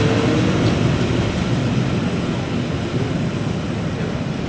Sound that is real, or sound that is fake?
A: real